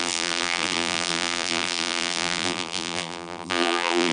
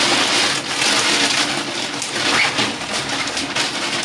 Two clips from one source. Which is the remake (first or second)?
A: first